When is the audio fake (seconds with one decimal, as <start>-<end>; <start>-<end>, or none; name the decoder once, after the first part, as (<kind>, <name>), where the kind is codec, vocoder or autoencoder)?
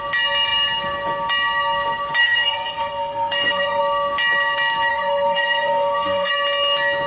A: 2.2-3.8 (codec, SNAC); 4.9-6.3